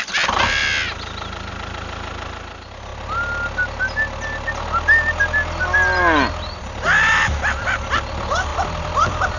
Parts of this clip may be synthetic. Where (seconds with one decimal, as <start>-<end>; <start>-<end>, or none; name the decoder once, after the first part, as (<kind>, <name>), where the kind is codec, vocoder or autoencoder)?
8.5-9.4 (vocoder, BigVGAN v2)